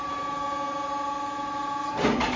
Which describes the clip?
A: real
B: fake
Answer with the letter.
A